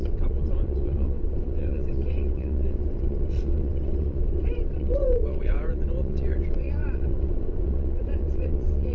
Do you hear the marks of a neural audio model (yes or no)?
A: yes